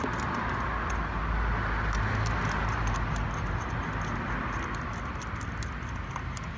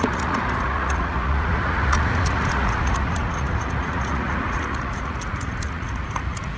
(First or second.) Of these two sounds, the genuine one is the first